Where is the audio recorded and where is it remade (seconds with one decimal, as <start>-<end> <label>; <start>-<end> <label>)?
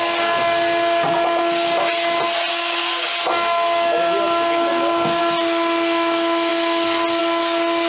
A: 0.0-2.5 recorded; 2.5-3.1 remade; 3.1-4.7 recorded; 4.7-5.2 remade; 5.2-7.9 recorded